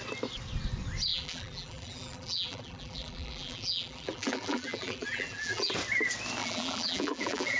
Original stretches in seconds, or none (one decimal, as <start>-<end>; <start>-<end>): 0.0-1.1; 5.7-6.4